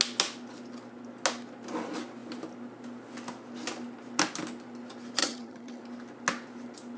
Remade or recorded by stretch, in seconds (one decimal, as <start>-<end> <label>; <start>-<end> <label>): 0.0-5.2 recorded; 5.2-5.8 remade; 5.8-7.0 recorded